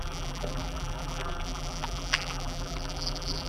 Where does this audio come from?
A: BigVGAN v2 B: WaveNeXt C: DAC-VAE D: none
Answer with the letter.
A